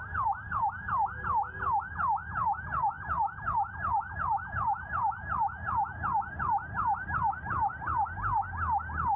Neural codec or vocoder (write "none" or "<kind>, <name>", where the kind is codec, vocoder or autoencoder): none